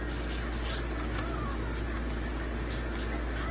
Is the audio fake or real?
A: real